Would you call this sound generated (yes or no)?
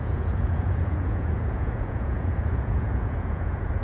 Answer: yes